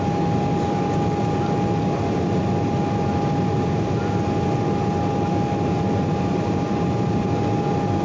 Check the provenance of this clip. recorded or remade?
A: recorded